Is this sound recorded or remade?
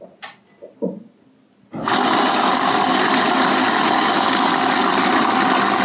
recorded